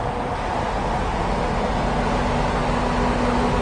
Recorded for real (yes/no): yes